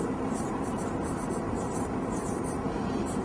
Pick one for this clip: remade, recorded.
remade